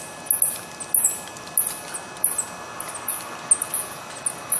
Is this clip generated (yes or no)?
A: no